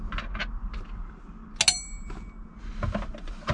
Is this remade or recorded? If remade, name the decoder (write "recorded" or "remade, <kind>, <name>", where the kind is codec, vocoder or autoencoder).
recorded